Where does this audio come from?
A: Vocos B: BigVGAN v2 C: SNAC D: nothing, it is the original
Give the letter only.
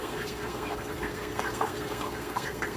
C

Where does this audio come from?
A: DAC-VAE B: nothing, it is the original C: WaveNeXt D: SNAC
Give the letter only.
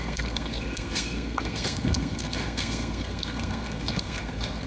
D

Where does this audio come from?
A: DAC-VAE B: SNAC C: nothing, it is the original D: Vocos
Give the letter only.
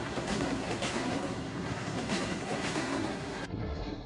B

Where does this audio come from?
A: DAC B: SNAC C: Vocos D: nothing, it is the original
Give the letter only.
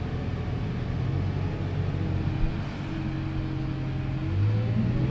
D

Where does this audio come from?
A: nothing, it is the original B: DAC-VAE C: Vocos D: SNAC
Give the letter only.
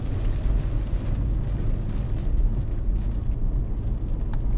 A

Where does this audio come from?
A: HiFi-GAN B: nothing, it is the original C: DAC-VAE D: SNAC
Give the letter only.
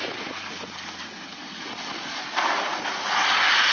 B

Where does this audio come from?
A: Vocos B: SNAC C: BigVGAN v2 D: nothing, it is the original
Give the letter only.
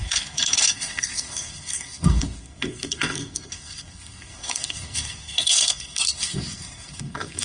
B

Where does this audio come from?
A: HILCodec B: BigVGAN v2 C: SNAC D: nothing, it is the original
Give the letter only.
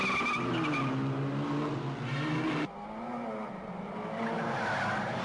D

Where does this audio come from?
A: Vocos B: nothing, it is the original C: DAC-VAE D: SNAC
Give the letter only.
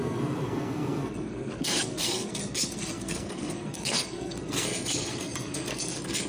D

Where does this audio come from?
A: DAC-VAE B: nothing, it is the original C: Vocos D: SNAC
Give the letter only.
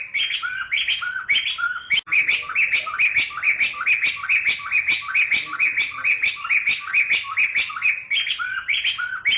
B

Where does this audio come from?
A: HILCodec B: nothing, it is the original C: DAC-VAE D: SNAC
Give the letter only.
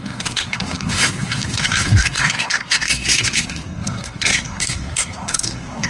D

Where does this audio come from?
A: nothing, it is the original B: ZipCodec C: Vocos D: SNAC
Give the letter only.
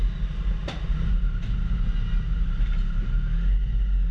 A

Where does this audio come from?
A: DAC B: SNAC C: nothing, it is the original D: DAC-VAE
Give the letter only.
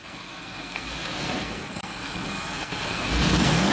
B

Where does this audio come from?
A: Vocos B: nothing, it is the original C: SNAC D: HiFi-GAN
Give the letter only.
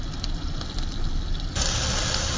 B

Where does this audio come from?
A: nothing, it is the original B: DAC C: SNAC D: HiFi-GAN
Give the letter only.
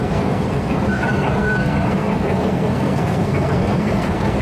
C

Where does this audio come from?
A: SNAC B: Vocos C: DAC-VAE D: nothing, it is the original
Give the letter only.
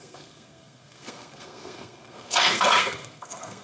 A